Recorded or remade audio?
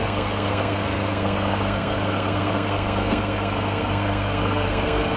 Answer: remade